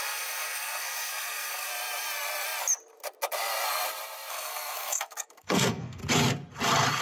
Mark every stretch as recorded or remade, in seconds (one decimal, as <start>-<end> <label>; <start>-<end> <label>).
0.0-1.7 remade; 1.7-4.3 recorded; 4.3-6.0 remade; 6.0-7.0 recorded